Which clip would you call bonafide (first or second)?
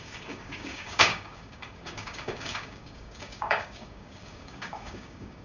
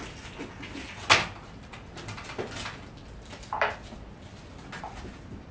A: second